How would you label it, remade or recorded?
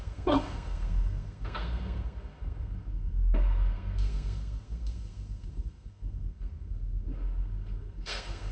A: remade